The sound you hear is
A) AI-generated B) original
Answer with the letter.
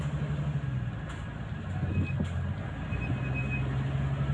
B